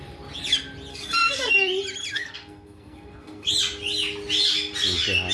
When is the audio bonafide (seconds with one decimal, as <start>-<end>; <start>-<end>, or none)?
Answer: 0.0-0.9; 1.5-2.1; 3.5-5.3